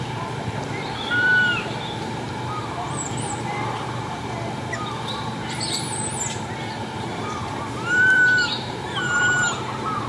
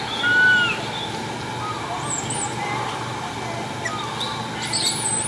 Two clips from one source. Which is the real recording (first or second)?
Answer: second